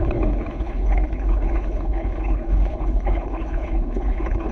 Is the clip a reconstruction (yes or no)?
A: yes